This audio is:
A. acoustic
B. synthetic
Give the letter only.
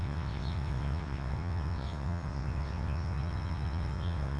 B